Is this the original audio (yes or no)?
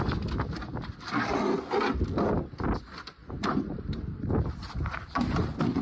yes